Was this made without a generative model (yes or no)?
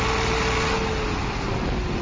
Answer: yes